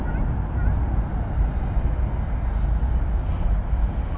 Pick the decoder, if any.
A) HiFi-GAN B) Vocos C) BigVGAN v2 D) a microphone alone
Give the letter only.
D